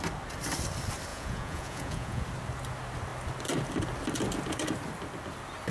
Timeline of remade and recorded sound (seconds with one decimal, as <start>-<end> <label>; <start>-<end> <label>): 0.0-1.1 recorded; 1.1-2.2 remade; 2.2-5.7 recorded